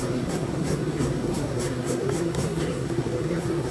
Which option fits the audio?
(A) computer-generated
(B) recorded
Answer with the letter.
A